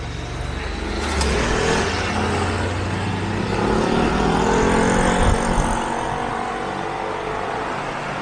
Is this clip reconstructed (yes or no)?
no